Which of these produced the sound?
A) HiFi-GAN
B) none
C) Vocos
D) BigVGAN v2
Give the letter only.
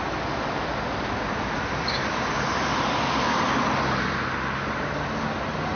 B